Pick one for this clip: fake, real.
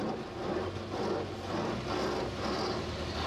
real